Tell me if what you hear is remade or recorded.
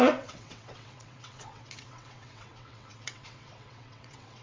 remade